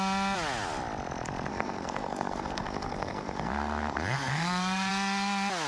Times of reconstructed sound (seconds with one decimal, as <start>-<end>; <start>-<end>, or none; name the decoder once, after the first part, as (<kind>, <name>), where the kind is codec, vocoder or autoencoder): 1.5-4.9 (codec, SNAC)